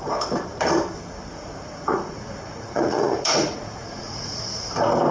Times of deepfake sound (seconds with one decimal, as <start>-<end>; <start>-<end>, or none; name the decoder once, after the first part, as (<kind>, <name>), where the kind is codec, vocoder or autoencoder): 1.3-4.4 (vocoder, Vocos)